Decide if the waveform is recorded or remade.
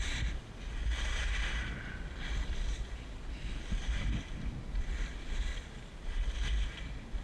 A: recorded